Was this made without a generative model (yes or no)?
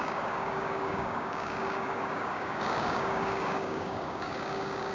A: no